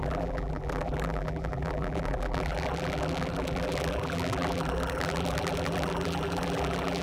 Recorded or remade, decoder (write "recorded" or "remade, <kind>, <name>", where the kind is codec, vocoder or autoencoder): remade, vocoder, BigVGAN v2